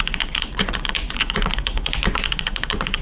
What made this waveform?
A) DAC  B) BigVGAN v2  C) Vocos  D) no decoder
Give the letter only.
C